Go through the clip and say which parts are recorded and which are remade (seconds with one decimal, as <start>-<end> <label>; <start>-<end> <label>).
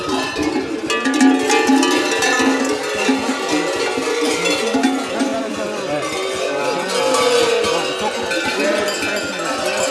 0.0-5.3 recorded; 5.3-7.0 remade; 7.0-9.9 recorded